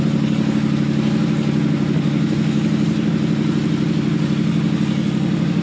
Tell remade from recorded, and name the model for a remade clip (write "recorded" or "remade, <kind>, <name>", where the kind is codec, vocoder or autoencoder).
recorded